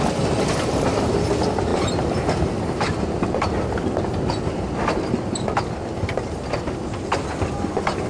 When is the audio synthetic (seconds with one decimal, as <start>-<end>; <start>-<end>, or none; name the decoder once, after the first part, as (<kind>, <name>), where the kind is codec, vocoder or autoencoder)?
none